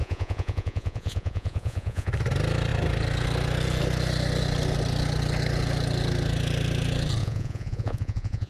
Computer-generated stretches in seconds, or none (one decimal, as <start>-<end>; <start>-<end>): 0.0-2.1; 7.2-8.5